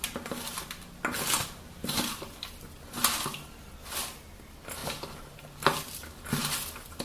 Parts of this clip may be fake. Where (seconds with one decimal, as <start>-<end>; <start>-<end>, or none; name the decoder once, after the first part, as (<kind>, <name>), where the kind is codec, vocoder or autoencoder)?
none